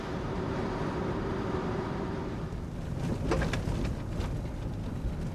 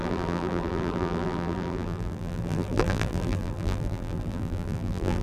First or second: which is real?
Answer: first